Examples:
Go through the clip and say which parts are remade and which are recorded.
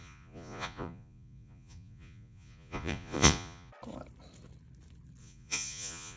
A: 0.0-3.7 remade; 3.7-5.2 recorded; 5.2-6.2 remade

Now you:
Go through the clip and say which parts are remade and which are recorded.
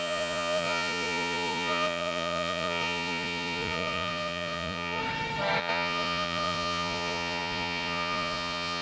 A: 0.0-5.0 remade; 5.0-5.6 recorded; 5.6-8.8 remade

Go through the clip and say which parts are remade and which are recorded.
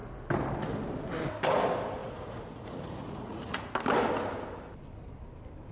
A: 0.0-2.0 recorded; 2.0-3.7 remade; 3.7-5.7 recorded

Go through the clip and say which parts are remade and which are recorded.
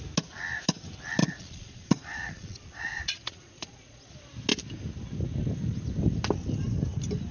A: 0.0-1.2 recorded; 1.2-4.1 remade; 4.1-7.3 recorded